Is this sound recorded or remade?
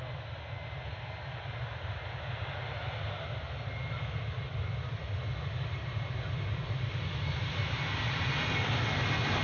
recorded